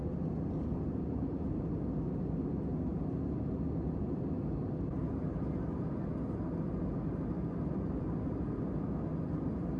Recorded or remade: recorded